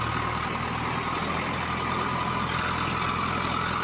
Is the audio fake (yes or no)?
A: no